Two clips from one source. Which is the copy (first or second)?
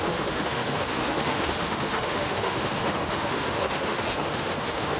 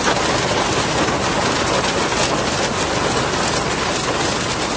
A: first